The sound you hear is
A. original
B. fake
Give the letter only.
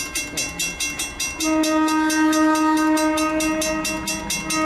A